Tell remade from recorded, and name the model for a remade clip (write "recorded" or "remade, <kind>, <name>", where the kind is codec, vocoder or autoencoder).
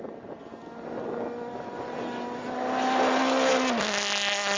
recorded